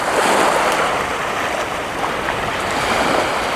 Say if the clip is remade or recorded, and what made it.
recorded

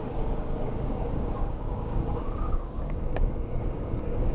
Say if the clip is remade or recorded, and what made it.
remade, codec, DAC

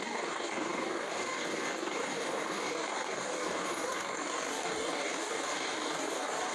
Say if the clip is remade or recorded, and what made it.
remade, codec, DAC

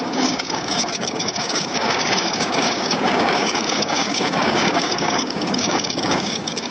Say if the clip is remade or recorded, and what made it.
remade, codec, DAC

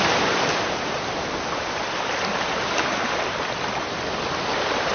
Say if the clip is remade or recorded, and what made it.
recorded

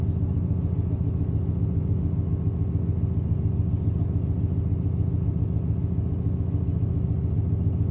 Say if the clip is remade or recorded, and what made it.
recorded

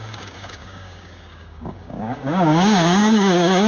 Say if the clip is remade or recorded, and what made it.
remade, codec, DAC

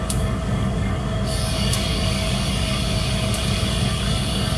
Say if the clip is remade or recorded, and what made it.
remade, codec, DAC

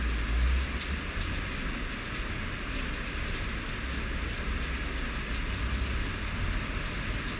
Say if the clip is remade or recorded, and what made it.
recorded